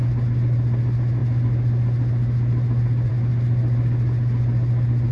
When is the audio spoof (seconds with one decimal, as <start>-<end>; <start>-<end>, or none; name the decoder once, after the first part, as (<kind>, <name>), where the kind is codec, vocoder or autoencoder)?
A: none